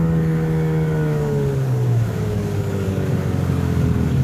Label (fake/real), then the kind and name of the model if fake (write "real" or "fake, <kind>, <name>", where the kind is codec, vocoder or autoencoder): fake, codec, DAC